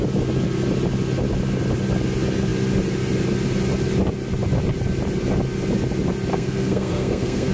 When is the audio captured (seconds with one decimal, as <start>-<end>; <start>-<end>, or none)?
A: 0.0-6.3